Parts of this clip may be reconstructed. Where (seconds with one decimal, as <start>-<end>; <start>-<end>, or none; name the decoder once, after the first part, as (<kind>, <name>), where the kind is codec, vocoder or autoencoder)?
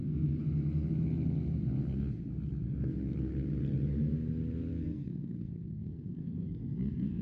0.0-0.4 (codec, SNAC); 4.7-7.2